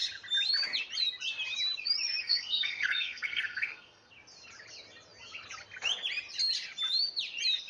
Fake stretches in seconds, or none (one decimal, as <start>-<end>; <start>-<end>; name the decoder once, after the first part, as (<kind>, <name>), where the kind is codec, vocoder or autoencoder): 2.2-4.1 (codec, SNAC)